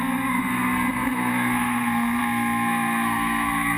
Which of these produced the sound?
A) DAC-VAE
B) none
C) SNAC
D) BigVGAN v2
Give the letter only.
C